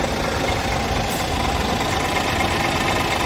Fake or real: real